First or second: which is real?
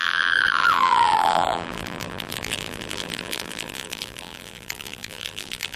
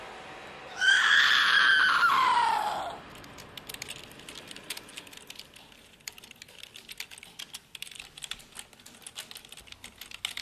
second